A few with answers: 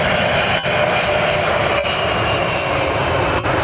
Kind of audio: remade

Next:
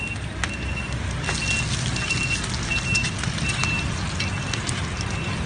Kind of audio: recorded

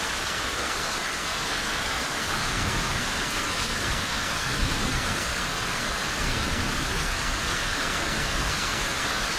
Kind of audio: remade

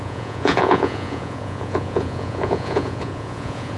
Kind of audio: remade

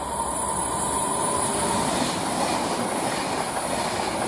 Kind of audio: recorded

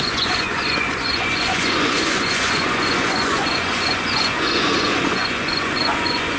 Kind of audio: remade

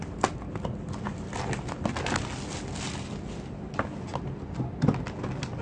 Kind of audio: recorded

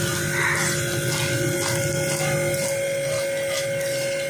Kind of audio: recorded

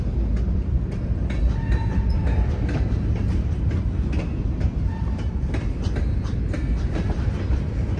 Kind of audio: recorded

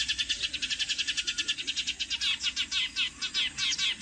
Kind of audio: recorded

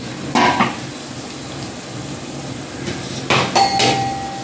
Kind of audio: recorded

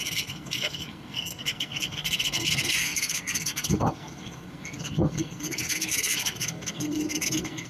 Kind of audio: remade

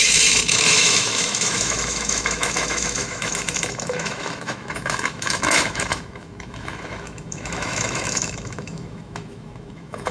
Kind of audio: remade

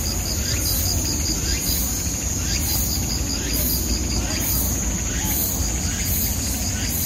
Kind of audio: recorded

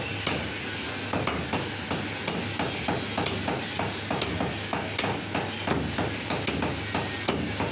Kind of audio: recorded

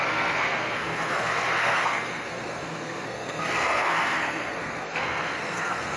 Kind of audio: remade